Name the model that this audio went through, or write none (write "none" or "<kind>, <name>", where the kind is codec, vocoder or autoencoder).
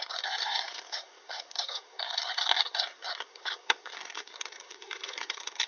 codec, SNAC